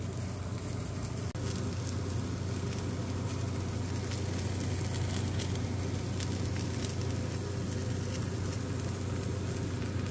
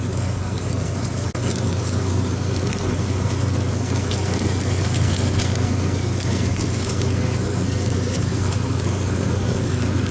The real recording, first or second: first